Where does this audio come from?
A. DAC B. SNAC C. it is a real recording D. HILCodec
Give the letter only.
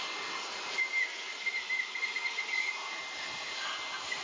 C